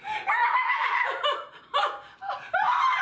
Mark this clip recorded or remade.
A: recorded